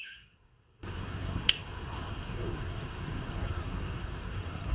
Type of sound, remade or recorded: remade